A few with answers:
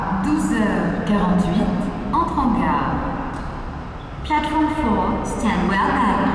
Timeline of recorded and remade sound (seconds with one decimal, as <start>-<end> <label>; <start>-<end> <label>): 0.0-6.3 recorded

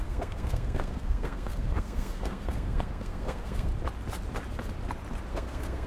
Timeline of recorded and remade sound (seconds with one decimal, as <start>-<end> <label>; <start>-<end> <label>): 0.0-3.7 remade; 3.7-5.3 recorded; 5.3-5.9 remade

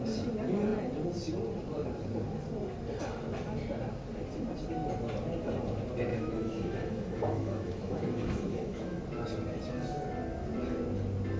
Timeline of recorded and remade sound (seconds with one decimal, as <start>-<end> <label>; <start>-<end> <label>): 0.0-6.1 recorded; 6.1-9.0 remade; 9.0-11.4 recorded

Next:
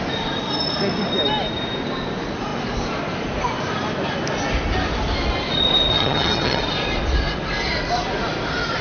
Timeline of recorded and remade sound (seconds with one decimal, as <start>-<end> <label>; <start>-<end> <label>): 0.0-5.9 recorded; 5.9-6.6 remade; 6.6-8.8 recorded